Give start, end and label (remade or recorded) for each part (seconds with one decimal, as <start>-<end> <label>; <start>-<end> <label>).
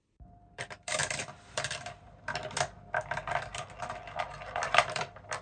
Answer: 0.0-1.0 remade; 1.0-4.2 recorded; 4.2-5.4 remade